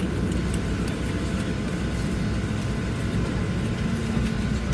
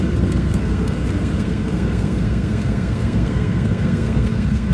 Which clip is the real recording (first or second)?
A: first